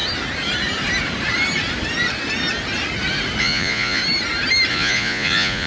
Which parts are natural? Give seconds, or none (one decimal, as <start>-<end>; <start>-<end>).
0.0-3.4; 4.0-4.7